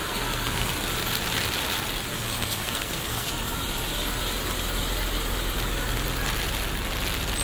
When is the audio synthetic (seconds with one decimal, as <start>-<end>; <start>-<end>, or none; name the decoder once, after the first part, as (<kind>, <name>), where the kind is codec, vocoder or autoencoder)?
0.0-0.7 (codec, SNAC); 2.1-3.3